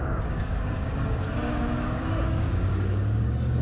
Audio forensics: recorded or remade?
remade